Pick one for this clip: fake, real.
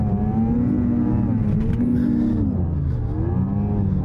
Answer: real